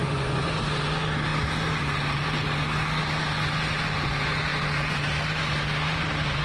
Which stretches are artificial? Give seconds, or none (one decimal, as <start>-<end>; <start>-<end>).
0.0-0.5